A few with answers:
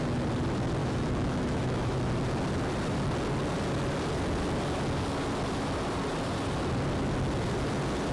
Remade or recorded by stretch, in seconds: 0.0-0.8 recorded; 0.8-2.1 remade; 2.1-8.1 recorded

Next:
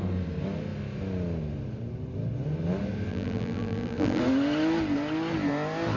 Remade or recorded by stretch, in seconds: 0.0-3.1 recorded; 3.1-4.2 remade; 4.2-6.0 recorded

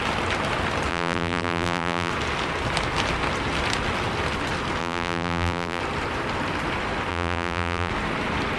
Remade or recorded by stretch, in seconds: 0.0-0.9 recorded; 0.9-2.1 remade; 2.1-4.8 recorded; 4.8-5.8 remade; 5.8-7.1 recorded; 7.1-7.9 remade; 7.9-8.6 recorded